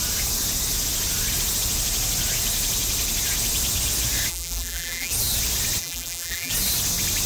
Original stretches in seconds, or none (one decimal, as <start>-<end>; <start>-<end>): 0.0-4.3; 5.1-5.8; 6.5-7.3